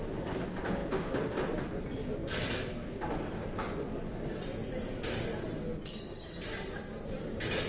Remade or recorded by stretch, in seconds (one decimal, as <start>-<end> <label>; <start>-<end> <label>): 0.0-7.7 recorded